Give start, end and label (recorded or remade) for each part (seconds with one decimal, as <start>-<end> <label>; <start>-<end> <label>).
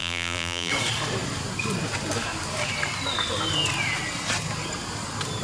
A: 0.0-0.7 remade; 0.7-5.4 recorded